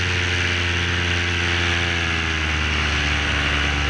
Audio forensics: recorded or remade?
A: recorded